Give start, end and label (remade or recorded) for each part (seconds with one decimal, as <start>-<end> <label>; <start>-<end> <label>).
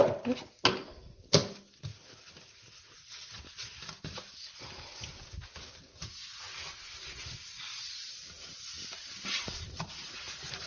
0.0-7.7 recorded; 7.7-10.7 remade